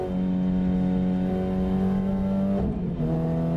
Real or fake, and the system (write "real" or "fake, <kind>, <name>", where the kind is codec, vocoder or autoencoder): real